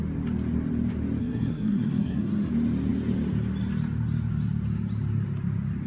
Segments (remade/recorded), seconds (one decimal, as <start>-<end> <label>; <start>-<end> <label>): 0.0-1.2 recorded; 1.2-2.5 remade; 2.5-5.9 recorded